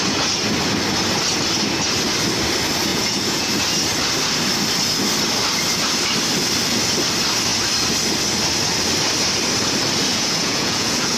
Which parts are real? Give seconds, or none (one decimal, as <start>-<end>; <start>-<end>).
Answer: 0.0-2.9; 3.5-10.1